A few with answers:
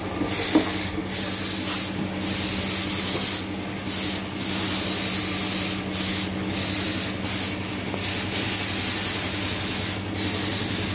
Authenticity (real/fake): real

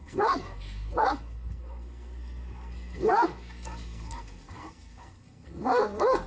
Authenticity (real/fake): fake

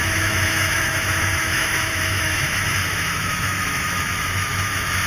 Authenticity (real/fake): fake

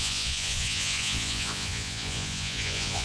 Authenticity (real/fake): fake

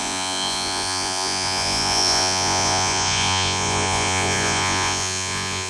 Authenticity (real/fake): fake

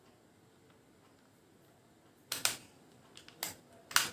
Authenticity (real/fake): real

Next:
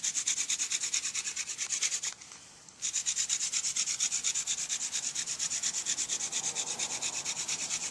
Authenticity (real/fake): real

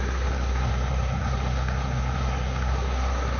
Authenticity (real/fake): fake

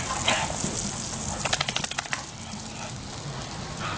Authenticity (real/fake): real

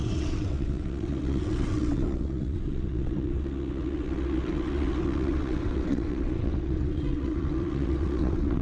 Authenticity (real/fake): fake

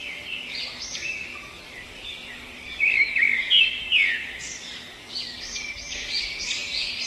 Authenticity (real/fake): fake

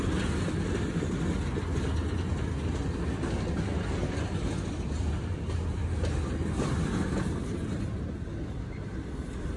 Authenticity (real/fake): real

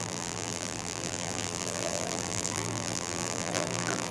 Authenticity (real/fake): fake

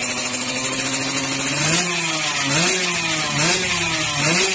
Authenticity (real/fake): real